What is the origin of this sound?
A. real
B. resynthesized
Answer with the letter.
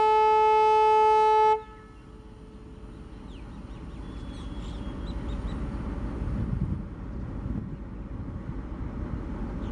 A